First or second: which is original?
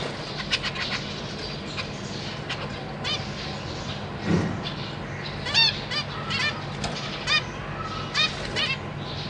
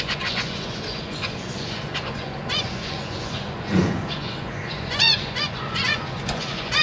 first